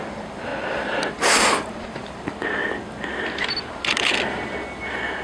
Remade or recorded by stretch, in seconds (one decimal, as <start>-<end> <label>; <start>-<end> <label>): 0.0-5.2 recorded